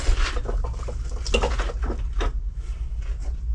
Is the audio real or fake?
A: real